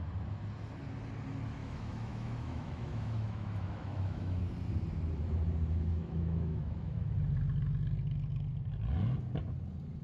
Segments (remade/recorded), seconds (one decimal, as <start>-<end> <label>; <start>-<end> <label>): 0.0-1.6 recorded; 1.6-4.4 remade; 4.4-5.9 recorded; 5.9-7.1 remade; 7.1-10.0 recorded